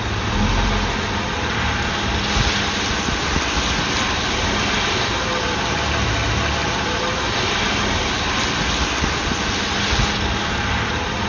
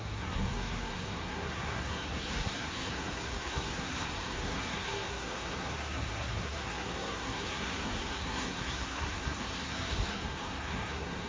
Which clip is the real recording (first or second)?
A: first